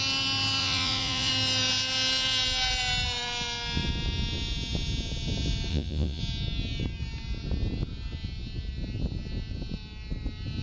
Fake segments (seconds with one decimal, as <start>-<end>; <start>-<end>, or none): 0.6-1.3; 5.7-6.2